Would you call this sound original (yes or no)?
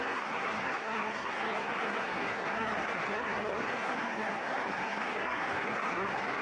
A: no